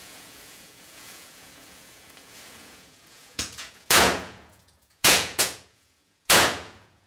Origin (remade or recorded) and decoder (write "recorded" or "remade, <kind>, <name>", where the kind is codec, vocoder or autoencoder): remade, vocoder, Vocos